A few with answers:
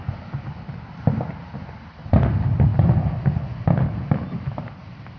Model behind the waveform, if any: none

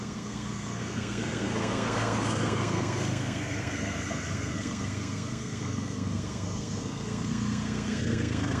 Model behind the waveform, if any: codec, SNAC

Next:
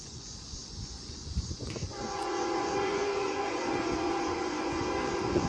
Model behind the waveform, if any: vocoder, Vocos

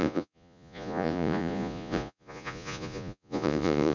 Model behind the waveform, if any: vocoder, Vocos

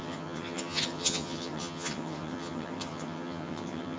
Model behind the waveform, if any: vocoder, HiFi-GAN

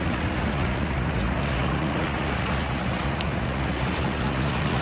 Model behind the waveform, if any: vocoder, Vocos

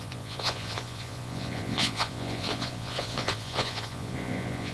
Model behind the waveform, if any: vocoder, Vocos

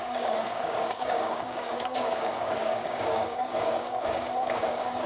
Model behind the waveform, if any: codec, DAC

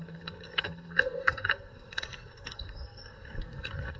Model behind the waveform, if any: codec, SNAC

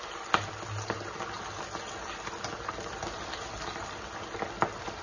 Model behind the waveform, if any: none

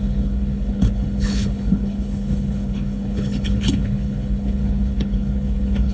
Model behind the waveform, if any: codec, HILCodec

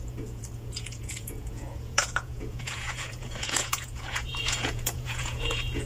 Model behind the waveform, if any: vocoder, Vocos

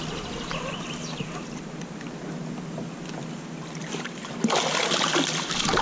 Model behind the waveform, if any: none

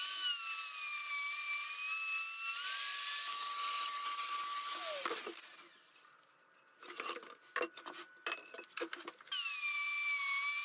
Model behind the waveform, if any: none